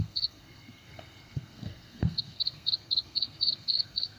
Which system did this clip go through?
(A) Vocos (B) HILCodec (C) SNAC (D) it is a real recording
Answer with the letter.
C